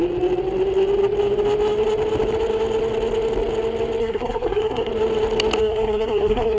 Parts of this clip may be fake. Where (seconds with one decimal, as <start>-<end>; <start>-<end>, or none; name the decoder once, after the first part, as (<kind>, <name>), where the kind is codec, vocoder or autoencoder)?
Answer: 4.0-4.9 (codec, SNAC); 5.6-6.6

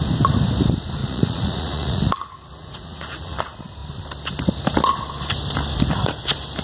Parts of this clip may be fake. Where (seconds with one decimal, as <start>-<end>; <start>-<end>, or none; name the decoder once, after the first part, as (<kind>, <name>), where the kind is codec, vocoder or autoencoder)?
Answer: 1.0-3.4 (vocoder, Vocos)

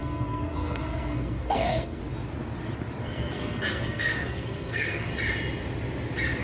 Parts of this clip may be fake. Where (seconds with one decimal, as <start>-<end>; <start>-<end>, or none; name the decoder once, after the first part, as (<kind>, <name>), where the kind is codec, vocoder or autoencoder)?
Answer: 0.0-2.0 (codec, SNAC); 3.0-5.1

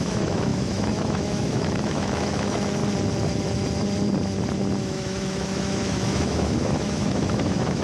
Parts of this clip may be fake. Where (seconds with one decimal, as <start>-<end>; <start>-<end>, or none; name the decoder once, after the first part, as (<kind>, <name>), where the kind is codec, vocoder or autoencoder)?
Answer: 0.0-2.8 (autoencoder, DAC-VAE); 4.8-7.8

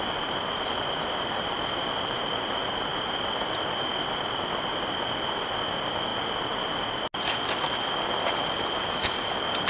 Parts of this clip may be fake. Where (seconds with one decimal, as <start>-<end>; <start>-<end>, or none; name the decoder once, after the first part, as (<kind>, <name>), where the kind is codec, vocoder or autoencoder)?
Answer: none

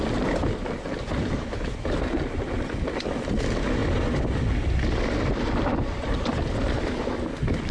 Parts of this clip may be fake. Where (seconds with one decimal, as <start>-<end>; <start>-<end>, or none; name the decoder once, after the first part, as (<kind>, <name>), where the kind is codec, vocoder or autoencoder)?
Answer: none

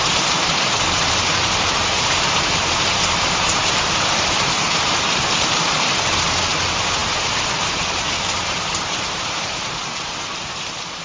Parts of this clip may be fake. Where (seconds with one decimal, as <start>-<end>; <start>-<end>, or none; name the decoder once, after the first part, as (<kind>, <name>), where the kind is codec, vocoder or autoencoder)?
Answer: 0.0-11.0 (vocoder, BigVGAN v2)

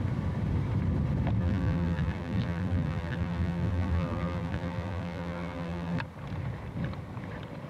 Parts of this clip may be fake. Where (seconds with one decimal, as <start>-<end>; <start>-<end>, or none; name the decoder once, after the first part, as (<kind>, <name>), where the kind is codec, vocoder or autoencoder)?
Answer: 1.4-6.0 (vocoder, BigVGAN v2)